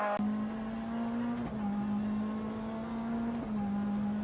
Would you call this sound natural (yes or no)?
yes